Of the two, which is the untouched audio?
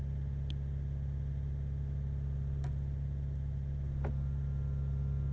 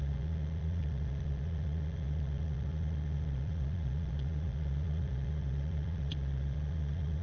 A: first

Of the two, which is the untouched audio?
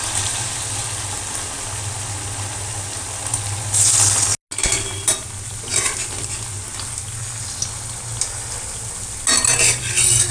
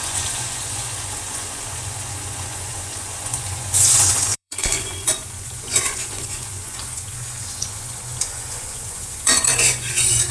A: first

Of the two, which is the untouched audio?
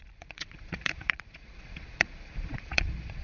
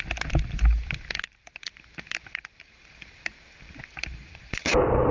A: second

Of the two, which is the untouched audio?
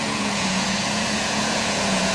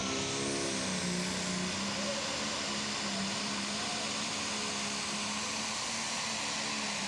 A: second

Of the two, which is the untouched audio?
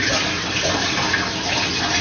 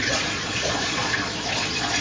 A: first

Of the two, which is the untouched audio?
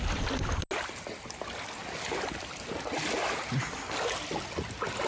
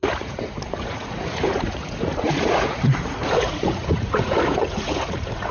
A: first